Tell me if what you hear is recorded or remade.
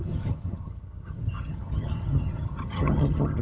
remade